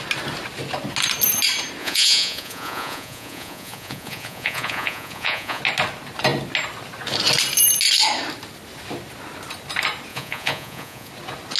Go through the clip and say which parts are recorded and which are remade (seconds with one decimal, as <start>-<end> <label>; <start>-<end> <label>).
0.0-1.8 recorded; 1.8-5.6 remade; 5.6-10.1 recorded; 10.1-11.1 remade; 11.1-11.6 recorded